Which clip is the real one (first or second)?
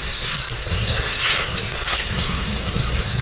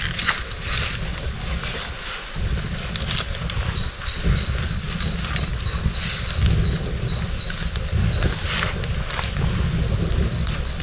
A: second